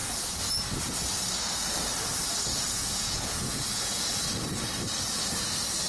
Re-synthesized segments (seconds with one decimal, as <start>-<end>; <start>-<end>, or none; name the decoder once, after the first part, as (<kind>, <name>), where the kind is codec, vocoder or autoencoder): 2.5-4.1 (vocoder, Vocos)

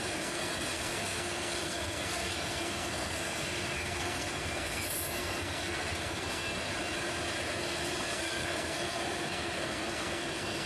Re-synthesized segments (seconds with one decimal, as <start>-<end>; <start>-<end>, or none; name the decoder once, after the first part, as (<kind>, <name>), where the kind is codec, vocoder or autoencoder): 0.0-6.7 (codec, SNAC); 7.5-10.7

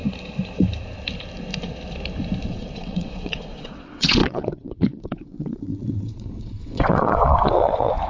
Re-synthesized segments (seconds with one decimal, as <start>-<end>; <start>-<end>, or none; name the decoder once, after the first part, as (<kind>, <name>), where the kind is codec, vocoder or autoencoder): 2.5-8.1 (vocoder, WaveNeXt)

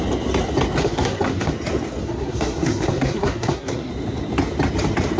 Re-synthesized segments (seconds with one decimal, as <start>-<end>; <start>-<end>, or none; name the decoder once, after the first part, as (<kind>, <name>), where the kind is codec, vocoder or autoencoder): 0.8-1.5 (codec, SNAC); 2.0-3.9

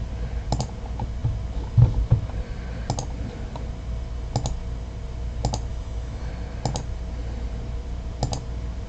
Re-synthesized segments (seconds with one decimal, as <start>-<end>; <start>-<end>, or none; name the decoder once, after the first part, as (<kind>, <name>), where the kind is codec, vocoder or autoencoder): 5.7-6.3 (autoencoder, DAC-VAE)

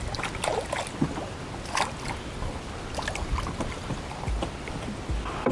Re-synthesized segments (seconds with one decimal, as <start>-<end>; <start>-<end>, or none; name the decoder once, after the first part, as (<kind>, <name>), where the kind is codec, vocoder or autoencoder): none